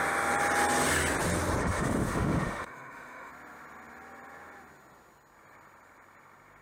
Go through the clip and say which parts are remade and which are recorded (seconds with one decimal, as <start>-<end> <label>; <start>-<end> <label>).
0.0-1.6 recorded; 1.6-3.3 remade; 3.3-6.6 recorded